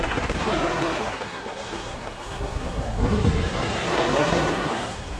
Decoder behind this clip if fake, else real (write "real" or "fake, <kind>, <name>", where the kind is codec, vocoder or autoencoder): fake, codec, SNAC